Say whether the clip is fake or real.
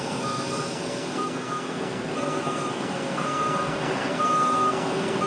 fake